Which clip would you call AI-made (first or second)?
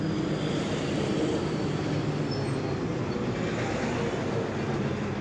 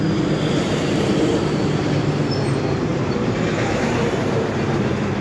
second